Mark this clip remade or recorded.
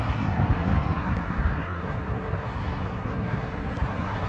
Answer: remade